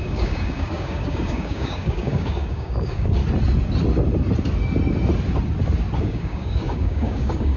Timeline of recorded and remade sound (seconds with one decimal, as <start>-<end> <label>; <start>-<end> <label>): 0.0-3.2 remade; 3.2-6.0 recorded; 6.0-7.6 remade